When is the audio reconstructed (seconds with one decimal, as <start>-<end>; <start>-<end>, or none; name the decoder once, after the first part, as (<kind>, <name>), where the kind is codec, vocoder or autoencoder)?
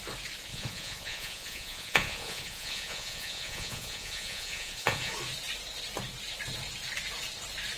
0.5-5.1 (vocoder, Vocos)